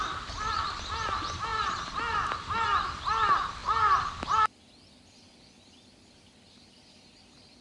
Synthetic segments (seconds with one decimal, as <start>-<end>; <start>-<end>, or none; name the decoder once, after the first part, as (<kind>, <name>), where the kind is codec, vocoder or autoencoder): none